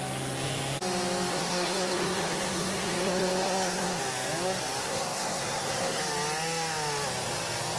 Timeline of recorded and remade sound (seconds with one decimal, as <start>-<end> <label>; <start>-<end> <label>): 0.0-1.3 recorded; 1.3-4.0 remade; 4.0-4.8 recorded; 4.8-6.0 remade; 6.0-7.8 recorded